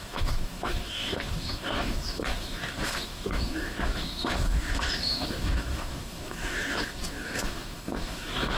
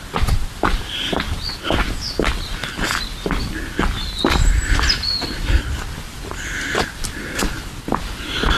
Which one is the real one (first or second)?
second